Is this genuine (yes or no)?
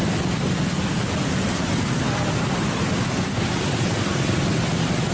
yes